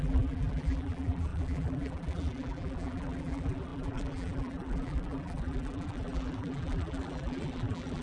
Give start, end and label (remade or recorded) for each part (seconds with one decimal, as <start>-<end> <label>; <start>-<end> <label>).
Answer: 0.0-8.0 remade